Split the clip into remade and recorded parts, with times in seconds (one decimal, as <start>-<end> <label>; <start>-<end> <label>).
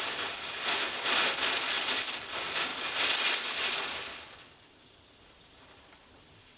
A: 0.0-6.6 recorded